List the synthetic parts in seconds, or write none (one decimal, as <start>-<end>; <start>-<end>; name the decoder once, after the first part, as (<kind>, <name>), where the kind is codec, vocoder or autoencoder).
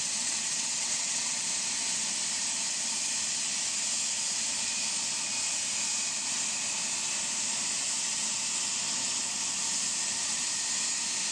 0.0-1.4 (vocoder, WaveNeXt)